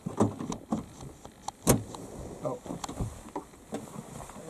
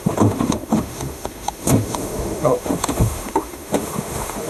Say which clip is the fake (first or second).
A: second